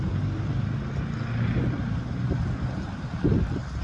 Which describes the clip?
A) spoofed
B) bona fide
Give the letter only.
B